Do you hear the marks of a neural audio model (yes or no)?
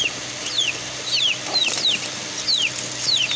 no